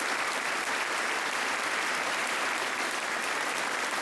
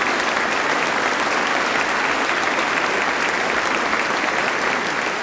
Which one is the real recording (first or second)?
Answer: second